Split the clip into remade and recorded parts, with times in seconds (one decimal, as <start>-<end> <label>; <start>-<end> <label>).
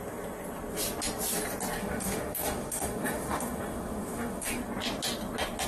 0.0-1.8 recorded; 1.8-4.6 remade; 4.6-5.7 recorded